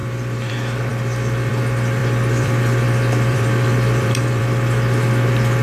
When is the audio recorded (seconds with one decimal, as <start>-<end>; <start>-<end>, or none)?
0.5-2.0; 4.4-5.6